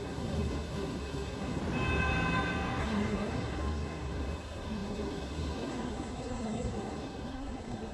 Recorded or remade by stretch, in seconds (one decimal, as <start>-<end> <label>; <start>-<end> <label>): 0.0-1.6 remade; 1.6-2.8 recorded; 2.8-7.9 remade